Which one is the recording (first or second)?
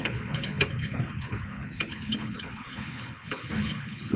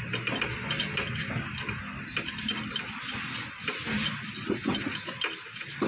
second